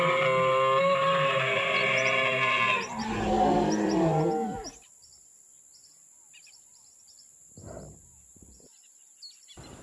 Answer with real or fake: real